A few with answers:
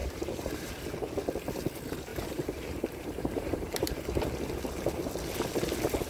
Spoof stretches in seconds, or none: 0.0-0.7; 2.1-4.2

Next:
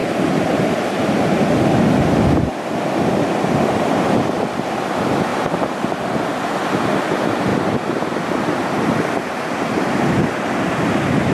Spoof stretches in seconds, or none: 0.0-5.3; 6.2-11.3